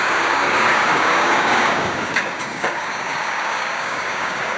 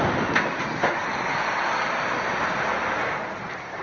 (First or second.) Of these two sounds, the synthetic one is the first